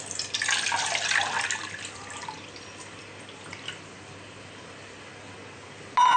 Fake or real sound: real